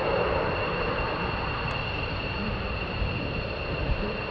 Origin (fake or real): fake